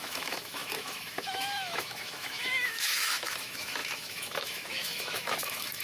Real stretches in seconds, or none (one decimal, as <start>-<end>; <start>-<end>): none